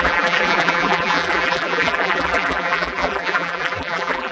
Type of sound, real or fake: fake